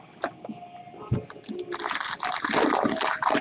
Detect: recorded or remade recorded